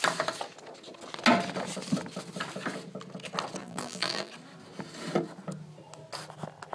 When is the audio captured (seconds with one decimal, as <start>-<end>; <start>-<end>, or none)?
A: 0.0-3.6; 4.3-6.7